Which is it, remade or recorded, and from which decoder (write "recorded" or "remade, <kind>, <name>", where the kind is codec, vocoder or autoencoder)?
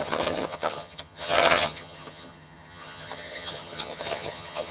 remade, vocoder, HiFi-GAN